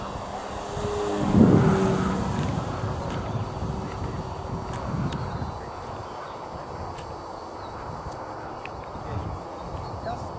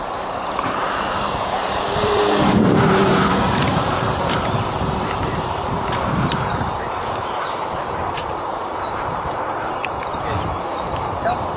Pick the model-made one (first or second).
second